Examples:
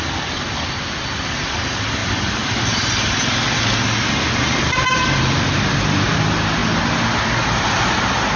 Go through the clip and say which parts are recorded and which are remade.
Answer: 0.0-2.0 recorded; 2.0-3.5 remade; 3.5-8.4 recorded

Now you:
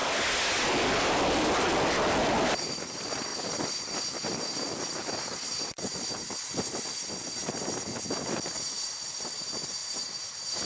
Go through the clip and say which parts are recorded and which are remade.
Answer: 0.0-1.1 recorded; 1.1-7.4 remade; 7.4-9.0 recorded; 9.0-9.8 remade; 9.8-10.7 recorded

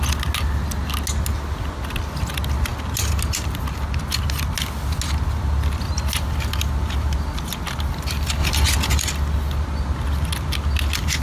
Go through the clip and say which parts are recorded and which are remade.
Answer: 0.0-11.2 recorded